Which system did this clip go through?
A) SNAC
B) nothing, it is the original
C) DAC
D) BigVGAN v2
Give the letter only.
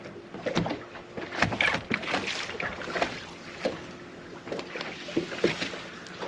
B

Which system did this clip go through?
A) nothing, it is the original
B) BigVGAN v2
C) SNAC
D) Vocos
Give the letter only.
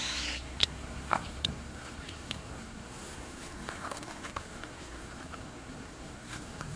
C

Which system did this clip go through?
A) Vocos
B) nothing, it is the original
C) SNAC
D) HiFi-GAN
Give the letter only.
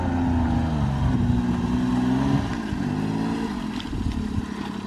B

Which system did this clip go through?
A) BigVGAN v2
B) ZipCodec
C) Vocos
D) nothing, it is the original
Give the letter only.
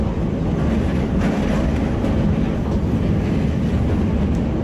D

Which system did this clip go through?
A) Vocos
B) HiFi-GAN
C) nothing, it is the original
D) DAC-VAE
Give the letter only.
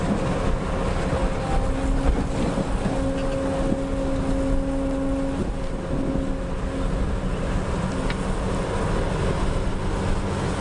C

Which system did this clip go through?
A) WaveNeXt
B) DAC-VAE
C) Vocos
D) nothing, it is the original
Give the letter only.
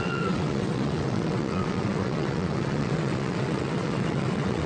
A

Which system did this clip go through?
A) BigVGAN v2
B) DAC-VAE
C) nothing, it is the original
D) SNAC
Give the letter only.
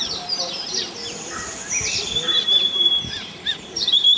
A